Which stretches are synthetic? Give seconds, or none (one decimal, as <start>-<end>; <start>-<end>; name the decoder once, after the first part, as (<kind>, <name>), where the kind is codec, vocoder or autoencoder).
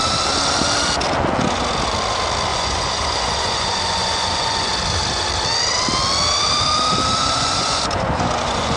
2.5-4.7 (vocoder, Vocos); 7.2-8.8